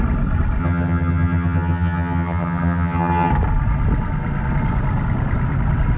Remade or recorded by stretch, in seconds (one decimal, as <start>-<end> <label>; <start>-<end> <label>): 0.0-0.6 recorded; 0.6-3.3 remade; 3.3-6.0 recorded